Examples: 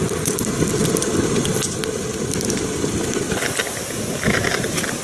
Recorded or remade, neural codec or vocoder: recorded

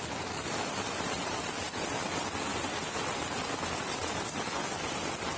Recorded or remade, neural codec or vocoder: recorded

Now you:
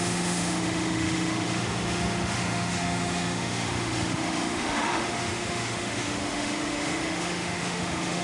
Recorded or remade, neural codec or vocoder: remade, autoencoder, DAC-VAE